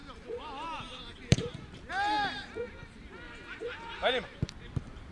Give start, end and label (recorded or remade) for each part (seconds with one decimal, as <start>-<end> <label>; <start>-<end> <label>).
0.0-5.1 recorded